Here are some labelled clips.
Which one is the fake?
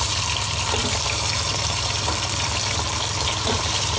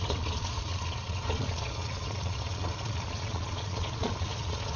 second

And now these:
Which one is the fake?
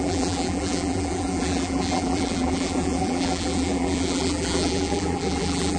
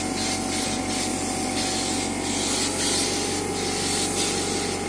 first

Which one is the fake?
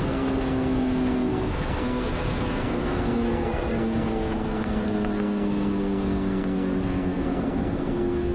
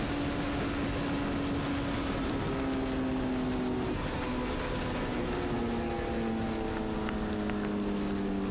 first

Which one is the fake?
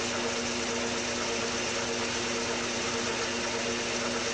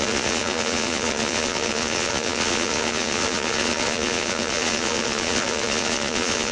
second